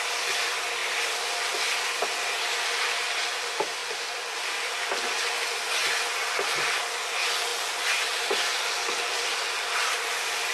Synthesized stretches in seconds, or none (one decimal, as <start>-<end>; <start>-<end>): none